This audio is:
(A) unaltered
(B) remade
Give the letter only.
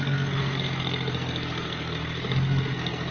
B